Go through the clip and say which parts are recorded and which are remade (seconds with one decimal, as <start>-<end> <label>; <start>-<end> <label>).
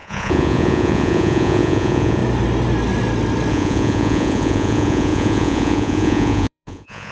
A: 0.0-2.2 remade; 2.2-3.5 recorded; 3.5-7.1 remade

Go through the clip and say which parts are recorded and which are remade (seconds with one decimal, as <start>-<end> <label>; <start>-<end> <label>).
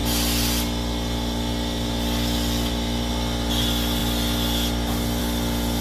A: 0.0-5.8 recorded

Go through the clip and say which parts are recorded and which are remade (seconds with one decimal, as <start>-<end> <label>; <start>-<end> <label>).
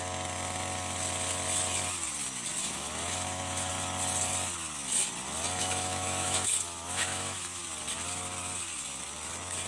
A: 0.0-2.6 recorded; 2.6-3.7 remade; 3.7-5.6 recorded; 5.6-7.6 remade; 7.6-9.7 recorded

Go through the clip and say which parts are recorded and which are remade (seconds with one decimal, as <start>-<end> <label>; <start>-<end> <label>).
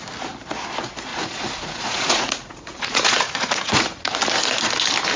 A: 0.0-1.1 recorded; 1.1-4.2 remade; 4.2-5.2 recorded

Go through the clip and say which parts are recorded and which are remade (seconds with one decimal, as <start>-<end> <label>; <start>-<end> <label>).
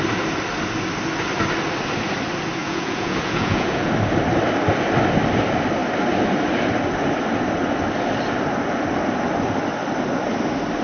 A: 0.0-2.6 recorded; 2.6-3.9 remade; 3.9-10.8 recorded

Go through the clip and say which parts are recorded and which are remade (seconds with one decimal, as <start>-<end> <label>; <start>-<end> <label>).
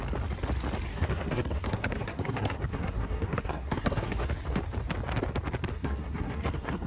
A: 0.0-0.9 recorded; 0.9-4.3 remade; 4.3-5.7 recorded; 5.7-6.9 remade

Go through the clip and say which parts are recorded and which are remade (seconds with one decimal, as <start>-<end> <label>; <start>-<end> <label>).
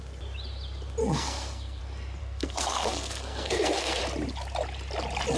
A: 0.0-1.0 recorded; 1.0-1.8 remade; 1.8-2.2 recorded; 2.2-4.0 remade; 4.0-5.4 recorded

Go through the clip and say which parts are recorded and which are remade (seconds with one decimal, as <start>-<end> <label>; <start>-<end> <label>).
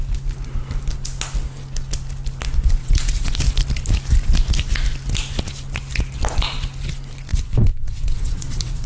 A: 0.0-2.8 recorded; 2.8-3.4 remade; 3.4-7.3 recorded; 7.3-8.9 remade